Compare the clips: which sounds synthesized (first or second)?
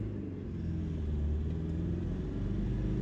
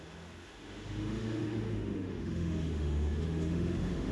second